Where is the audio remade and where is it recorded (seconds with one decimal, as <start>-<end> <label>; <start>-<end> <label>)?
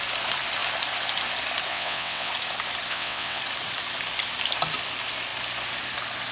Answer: 0.0-1.7 recorded; 1.7-2.3 remade; 2.3-2.9 recorded; 2.9-3.4 remade; 3.4-6.3 recorded